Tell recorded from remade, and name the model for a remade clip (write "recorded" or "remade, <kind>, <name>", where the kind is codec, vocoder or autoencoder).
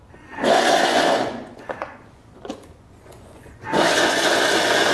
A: remade, vocoder, Vocos